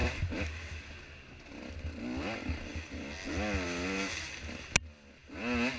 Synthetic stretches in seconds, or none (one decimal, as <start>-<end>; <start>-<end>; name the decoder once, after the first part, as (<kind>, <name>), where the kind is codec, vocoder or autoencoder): none